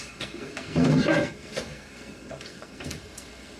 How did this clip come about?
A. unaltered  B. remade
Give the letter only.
B